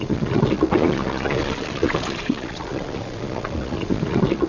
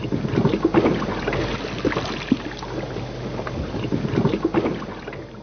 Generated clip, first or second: first